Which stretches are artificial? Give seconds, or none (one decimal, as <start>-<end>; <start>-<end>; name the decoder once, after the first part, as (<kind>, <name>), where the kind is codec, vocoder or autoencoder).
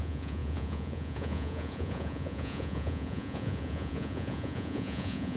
0.0-5.4 (vocoder, Vocos)